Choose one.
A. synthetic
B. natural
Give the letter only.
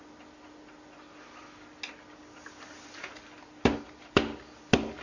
B